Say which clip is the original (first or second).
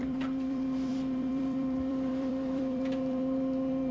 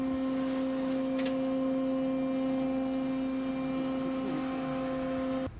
second